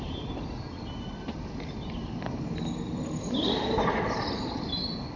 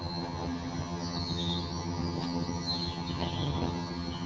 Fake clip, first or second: second